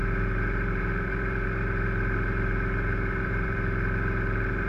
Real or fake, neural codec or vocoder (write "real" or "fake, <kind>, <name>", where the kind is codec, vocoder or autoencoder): fake, vocoder, BigVGAN v2